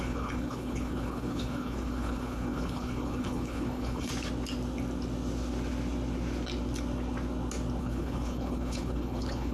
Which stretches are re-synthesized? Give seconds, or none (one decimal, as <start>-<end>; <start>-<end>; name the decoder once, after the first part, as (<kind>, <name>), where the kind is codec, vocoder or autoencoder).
0.0-4.1 (codec, HILCodec); 7.8-9.5

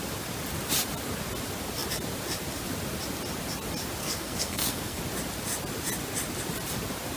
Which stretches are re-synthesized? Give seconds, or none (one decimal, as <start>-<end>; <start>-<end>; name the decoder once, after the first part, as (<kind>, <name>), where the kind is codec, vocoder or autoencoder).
4.0-5.0 (codec, SNAC)

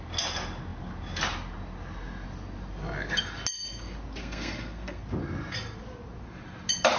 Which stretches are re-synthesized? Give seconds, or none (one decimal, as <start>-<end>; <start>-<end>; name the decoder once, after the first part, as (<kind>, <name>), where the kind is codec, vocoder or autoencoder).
4.2-5.0 (codec, SNAC)

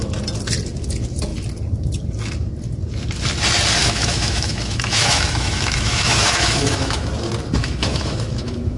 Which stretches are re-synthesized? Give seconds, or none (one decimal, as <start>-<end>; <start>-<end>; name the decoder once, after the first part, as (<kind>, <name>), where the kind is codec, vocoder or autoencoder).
3.8-7.1 (autoencoder, DAC-VAE); 7.6-8.8

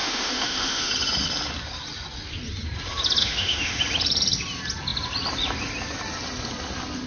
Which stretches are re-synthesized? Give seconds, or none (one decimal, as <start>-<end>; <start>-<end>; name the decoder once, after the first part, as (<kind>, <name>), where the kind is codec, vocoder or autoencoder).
0.0-0.9 (autoencoder, DAC-VAE); 3.2-3.8

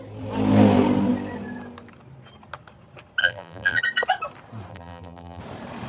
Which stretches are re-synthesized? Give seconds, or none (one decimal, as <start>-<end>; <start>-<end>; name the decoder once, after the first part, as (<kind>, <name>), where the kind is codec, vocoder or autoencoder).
3.2-3.8 (vocoder, BigVGAN v2); 4.7-5.4